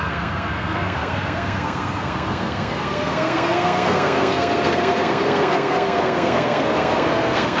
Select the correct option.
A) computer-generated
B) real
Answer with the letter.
A